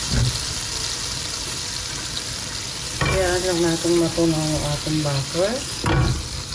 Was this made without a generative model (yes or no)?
yes